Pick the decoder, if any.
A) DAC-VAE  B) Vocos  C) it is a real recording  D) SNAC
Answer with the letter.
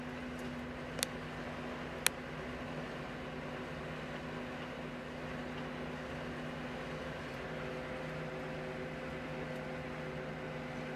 C